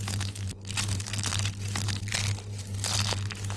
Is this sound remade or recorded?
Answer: remade